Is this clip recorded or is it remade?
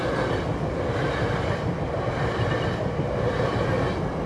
recorded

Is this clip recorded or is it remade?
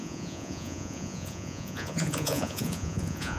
remade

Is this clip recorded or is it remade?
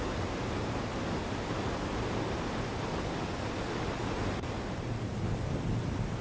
recorded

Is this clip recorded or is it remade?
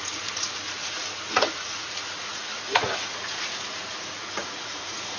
remade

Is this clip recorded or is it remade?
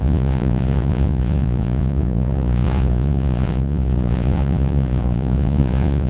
remade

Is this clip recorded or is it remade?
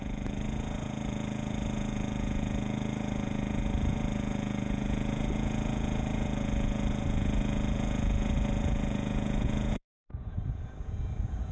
remade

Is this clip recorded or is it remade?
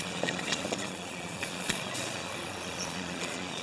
remade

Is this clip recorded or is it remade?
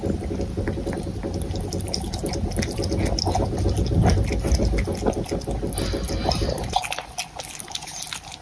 recorded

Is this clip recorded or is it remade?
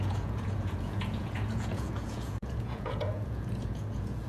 remade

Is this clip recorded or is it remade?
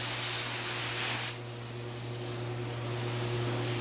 recorded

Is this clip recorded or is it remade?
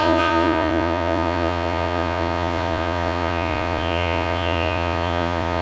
remade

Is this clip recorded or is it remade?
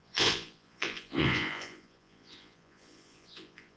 remade